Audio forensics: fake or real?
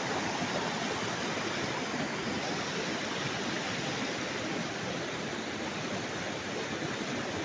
real